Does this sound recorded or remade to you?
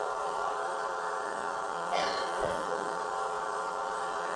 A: remade